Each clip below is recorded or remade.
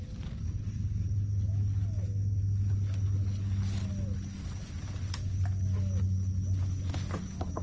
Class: recorded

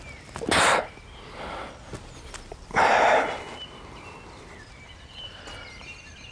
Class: recorded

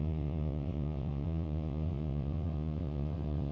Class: remade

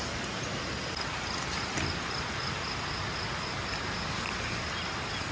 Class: recorded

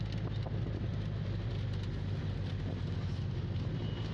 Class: recorded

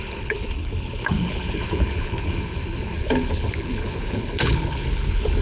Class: remade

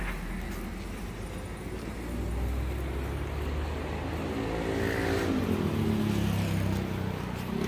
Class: recorded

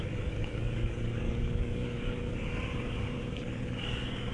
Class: remade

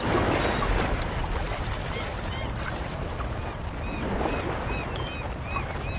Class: recorded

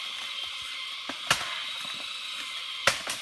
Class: recorded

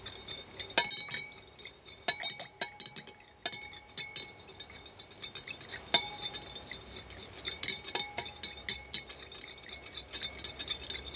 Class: recorded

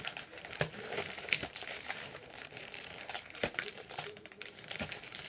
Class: remade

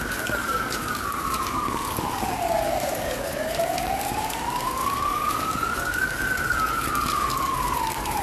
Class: remade